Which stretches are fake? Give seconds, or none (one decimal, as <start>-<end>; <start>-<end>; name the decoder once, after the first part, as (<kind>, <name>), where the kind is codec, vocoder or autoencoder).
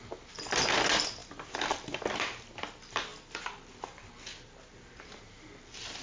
1.2-2.0 (vocoder, BigVGAN v2); 3.1-4.1